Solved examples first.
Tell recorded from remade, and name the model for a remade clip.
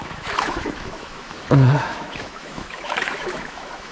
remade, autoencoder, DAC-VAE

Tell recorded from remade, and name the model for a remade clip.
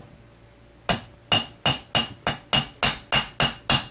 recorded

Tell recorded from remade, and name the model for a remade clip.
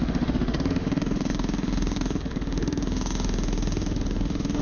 remade, autoencoder, DAC-VAE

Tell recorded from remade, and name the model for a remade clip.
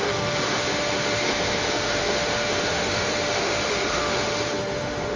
remade, autoencoder, DAC-VAE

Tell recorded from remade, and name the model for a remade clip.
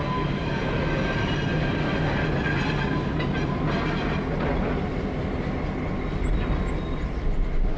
recorded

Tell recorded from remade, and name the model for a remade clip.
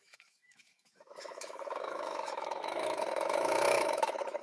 remade, autoencoder, DAC-VAE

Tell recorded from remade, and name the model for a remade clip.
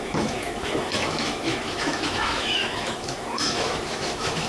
remade, autoencoder, DAC-VAE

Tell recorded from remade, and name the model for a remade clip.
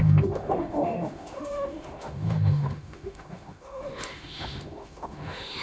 remade, autoencoder, DAC-VAE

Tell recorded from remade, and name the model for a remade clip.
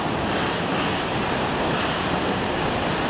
recorded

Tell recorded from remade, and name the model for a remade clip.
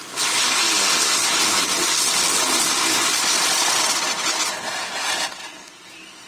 recorded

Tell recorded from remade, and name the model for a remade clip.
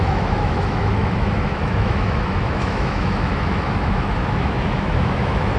remade, autoencoder, DAC-VAE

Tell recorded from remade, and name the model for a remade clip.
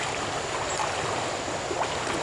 recorded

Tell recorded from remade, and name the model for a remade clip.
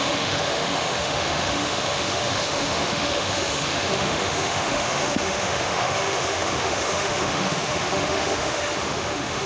remade, autoencoder, DAC-VAE